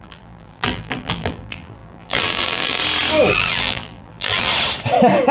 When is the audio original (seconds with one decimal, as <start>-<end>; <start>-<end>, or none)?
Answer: 2.8-3.3; 4.5-5.3